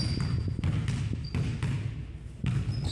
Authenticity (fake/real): real